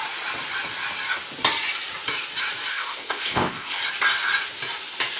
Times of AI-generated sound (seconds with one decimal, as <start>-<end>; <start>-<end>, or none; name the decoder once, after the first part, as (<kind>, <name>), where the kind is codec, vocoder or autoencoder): 2.7-3.8 (codec, ZipCodec)